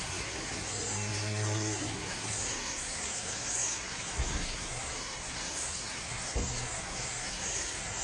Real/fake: fake